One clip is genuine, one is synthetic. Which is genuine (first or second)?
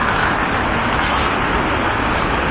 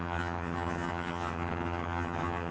first